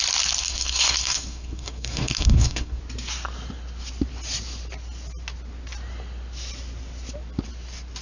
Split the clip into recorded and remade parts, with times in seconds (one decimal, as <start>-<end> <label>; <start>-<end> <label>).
0.0-0.4 recorded; 0.4-2.8 remade; 2.8-8.0 recorded